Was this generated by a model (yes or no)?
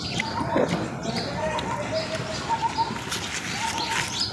no